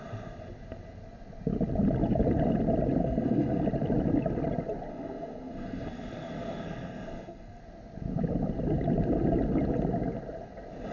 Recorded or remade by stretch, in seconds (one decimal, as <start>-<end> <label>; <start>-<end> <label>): 0.0-3.0 recorded; 3.0-3.6 remade; 3.6-4.9 recorded; 4.9-7.6 remade; 7.6-10.9 recorded